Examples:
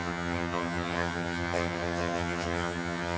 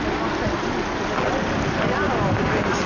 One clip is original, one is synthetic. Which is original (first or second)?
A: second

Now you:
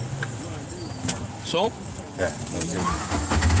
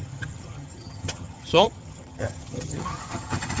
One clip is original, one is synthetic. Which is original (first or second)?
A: first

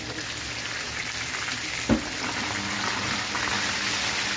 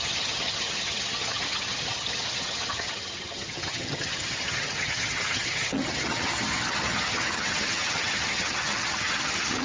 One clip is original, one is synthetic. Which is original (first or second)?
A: first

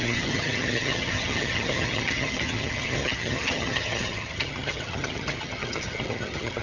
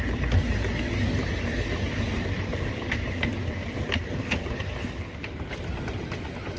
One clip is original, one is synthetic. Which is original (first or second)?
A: second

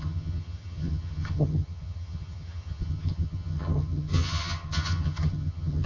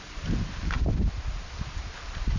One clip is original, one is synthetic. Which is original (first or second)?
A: second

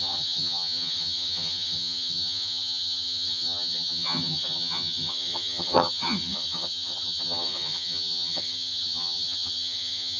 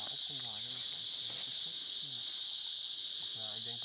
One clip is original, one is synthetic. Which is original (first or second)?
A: second